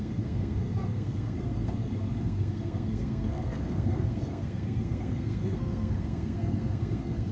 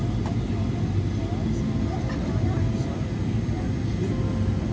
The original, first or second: second